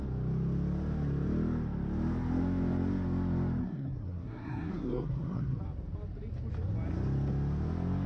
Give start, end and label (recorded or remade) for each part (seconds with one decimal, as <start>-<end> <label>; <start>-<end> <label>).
0.0-3.6 recorded; 3.6-5.6 remade; 5.6-8.1 recorded